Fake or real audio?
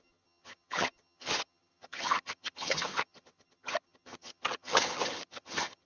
fake